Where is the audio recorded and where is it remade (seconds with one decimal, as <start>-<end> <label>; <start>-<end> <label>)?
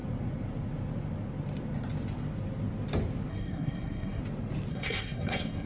0.0-3.3 recorded; 3.3-4.2 remade; 4.2-4.7 recorded; 4.7-5.7 remade